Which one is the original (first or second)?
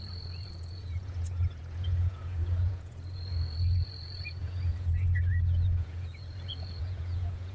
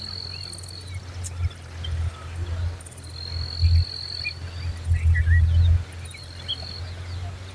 second